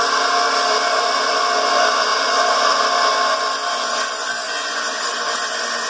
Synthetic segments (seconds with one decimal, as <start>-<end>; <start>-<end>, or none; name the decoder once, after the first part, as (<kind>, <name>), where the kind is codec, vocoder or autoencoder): 2.1-2.7 (vocoder, BigVGAN v2)